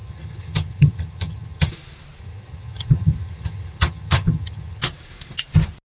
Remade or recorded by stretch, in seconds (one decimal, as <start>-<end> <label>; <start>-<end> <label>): 0.0-1.7 remade; 1.7-2.2 recorded; 2.2-4.8 remade; 4.8-5.8 recorded